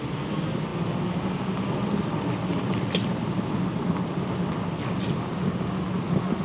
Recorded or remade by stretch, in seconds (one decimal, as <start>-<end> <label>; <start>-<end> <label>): 0.0-6.4 recorded